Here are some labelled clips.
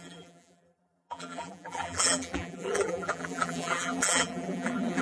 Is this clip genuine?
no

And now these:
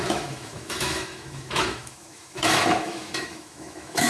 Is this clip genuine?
no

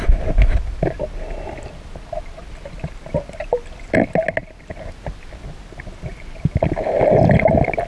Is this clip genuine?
yes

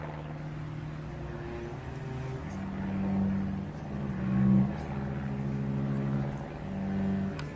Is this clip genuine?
yes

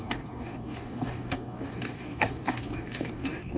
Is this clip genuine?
no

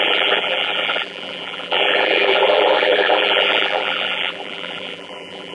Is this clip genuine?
no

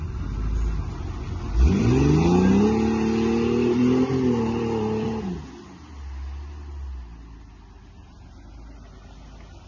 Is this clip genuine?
yes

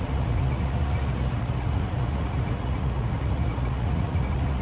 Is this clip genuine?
no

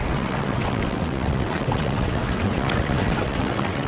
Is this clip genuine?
no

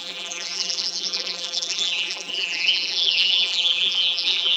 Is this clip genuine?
no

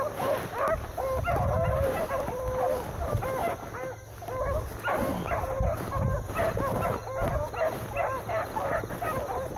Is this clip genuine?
yes